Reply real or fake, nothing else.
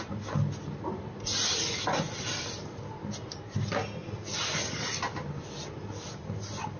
real